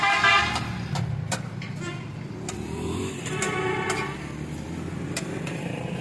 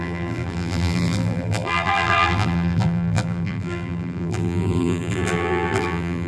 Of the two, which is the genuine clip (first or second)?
first